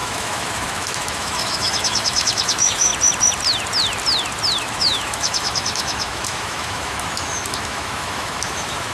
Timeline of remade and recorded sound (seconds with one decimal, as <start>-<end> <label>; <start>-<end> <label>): 0.0-2.9 remade; 2.9-4.6 recorded; 4.6-8.9 remade